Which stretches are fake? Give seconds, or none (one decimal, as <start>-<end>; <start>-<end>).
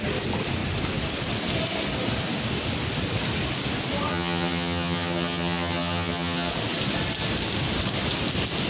4.1-6.5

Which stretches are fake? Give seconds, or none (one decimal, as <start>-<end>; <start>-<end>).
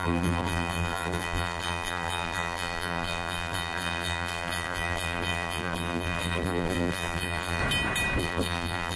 0.0-7.6; 8.2-9.0